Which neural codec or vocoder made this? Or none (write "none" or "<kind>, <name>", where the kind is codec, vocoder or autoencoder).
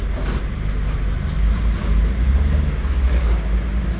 none